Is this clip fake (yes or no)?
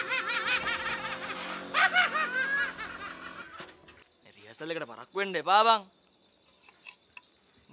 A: no